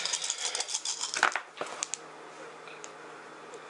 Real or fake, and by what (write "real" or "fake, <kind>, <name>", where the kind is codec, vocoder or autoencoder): real